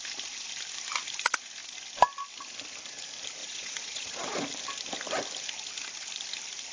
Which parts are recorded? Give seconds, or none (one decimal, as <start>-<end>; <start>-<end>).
0.0-3.4; 4.4-6.7